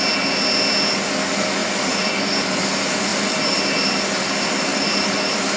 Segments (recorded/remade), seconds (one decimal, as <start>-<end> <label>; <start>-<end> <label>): 0.0-1.6 recorded; 1.6-2.6 remade; 2.6-3.1 recorded; 3.1-4.2 remade; 4.2-4.7 recorded; 4.7-5.6 remade